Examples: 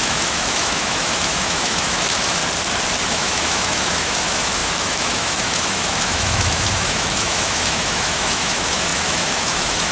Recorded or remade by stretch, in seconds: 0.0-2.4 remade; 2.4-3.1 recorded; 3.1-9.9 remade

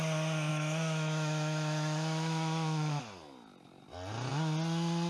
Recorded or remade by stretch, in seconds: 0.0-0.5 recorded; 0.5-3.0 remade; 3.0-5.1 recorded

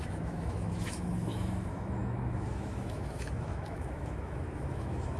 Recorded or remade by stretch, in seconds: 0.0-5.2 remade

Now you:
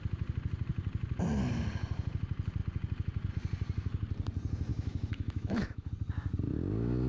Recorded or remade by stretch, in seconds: 0.0-4.7 recorded; 4.7-5.9 remade; 5.9-7.1 recorded

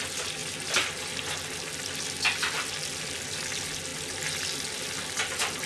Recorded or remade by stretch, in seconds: 0.0-5.7 recorded

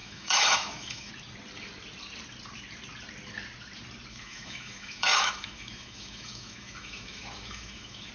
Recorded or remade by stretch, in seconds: 0.0-1.1 remade; 1.1-4.1 recorded; 4.1-8.1 remade